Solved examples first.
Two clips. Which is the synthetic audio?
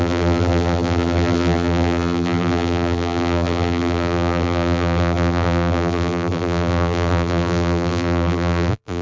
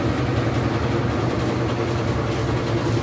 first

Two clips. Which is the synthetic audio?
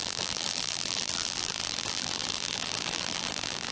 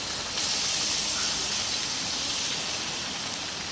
first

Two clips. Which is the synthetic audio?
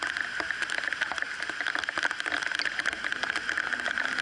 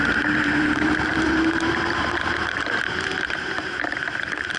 second